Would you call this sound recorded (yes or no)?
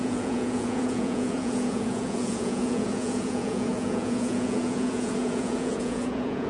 no